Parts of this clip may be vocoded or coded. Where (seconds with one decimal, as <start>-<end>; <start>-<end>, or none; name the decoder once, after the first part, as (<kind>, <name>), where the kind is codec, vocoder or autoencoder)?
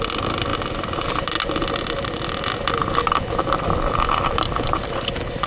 none